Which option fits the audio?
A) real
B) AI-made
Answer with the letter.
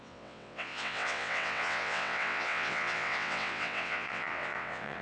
B